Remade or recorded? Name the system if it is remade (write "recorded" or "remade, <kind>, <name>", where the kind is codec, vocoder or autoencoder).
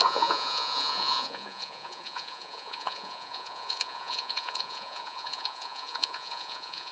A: remade, vocoder, Vocos